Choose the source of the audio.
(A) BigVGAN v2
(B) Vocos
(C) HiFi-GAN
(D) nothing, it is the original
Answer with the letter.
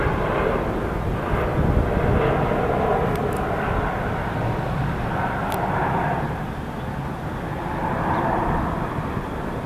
D